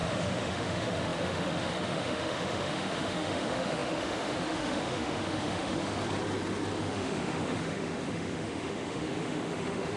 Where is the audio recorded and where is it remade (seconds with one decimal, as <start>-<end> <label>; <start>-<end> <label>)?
0.0-6.0 remade; 6.0-6.8 recorded; 6.8-10.0 remade